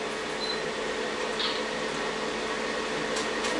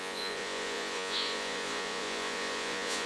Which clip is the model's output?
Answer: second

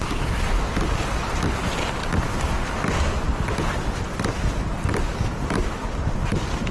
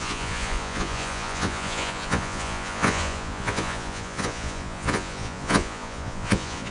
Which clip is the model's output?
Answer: second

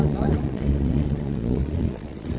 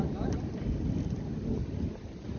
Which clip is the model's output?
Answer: first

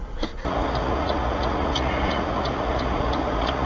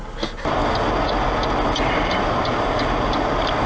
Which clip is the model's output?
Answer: first